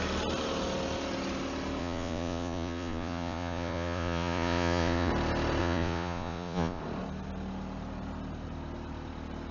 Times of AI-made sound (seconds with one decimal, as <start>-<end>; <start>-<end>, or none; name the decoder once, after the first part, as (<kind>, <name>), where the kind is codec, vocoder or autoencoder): 1.8-5.1 (vocoder, Vocos); 5.6-6.8